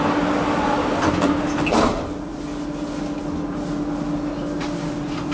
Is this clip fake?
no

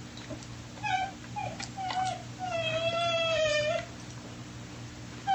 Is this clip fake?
no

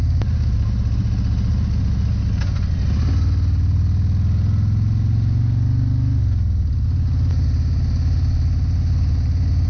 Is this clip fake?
no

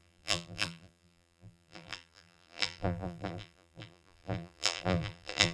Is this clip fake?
yes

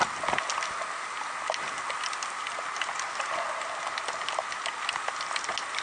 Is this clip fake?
no